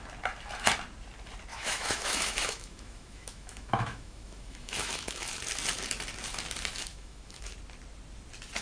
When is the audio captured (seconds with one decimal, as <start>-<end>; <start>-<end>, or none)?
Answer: 0.0-1.5; 5.4-6.9; 7.5-8.6